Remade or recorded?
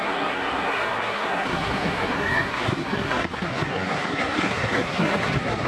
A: remade